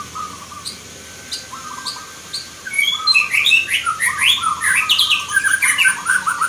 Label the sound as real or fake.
real